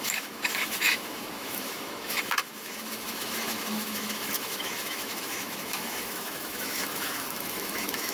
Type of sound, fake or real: fake